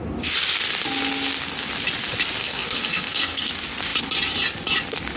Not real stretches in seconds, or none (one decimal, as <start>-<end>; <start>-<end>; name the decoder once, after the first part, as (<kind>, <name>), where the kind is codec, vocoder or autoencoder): 2.4-3.5 (codec, SNAC)